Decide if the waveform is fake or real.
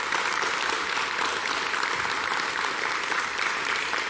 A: real